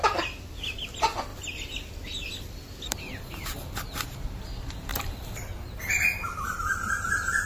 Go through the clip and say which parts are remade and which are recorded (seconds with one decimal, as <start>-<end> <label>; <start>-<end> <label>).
0.0-1.3 recorded; 1.3-3.7 remade; 3.7-4.9 recorded; 4.9-6.9 remade; 6.9-7.5 recorded